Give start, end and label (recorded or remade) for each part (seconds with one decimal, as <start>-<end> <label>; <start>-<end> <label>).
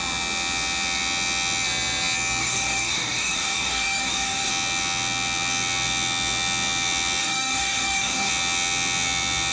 0.0-2.4 recorded; 2.4-4.5 remade; 4.5-7.2 recorded; 7.2-8.3 remade; 8.3-9.5 recorded